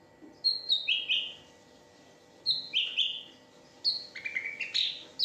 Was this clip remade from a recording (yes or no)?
no